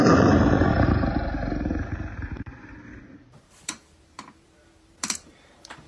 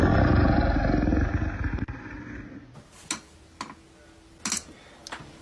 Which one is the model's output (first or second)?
first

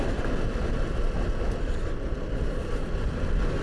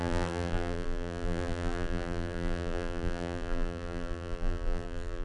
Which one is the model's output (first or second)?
second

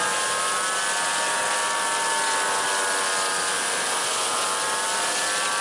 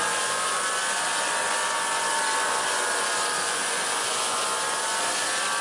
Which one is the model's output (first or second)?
second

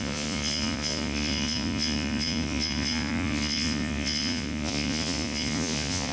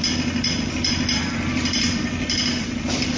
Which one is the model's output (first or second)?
first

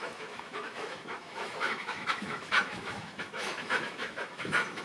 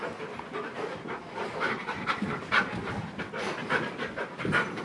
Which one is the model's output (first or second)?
first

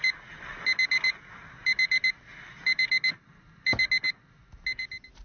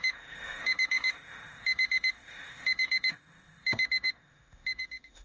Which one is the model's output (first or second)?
second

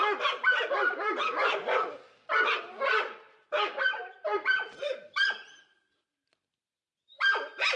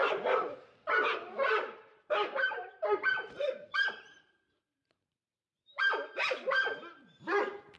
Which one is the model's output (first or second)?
second